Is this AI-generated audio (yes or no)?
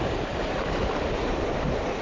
no